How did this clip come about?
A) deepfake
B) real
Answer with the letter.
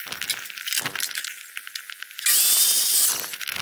B